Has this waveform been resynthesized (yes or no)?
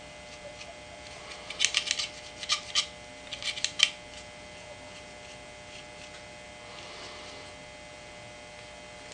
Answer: no